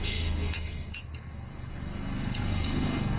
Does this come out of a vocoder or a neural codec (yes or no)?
yes